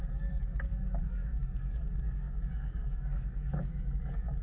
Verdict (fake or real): fake